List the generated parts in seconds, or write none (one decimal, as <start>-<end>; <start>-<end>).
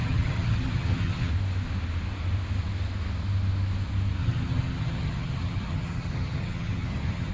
0.0-1.3; 4.2-7.3